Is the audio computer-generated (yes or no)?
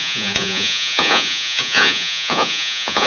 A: yes